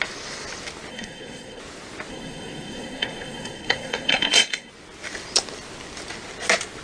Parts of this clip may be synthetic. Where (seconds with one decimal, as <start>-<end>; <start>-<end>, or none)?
0.9-1.6; 2.1-4.7